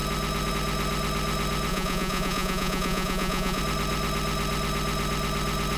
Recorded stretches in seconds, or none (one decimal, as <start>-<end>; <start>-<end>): 0.0-1.7; 3.6-5.8